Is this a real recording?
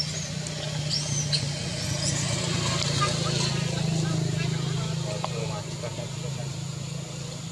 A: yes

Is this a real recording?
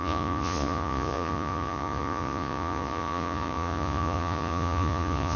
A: no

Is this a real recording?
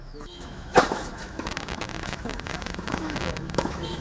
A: no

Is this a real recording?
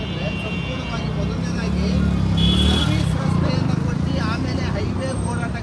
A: yes